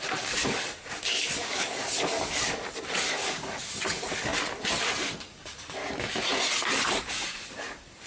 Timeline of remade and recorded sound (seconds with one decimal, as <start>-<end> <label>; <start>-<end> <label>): 0.0-4.3 remade; 4.3-5.2 recorded; 5.2-5.8 remade; 5.8-6.9 recorded; 6.9-8.1 remade